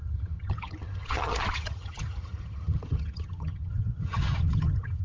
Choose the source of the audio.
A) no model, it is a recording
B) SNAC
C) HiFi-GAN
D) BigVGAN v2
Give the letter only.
C